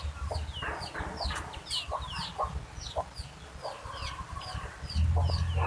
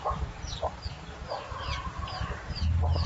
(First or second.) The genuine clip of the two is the first